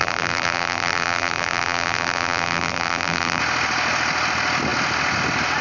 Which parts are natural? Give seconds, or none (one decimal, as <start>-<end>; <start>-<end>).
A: 3.4-5.6